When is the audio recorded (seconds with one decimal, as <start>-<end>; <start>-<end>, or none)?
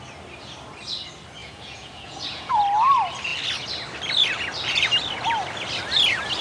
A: 0.0-1.4; 2.6-6.4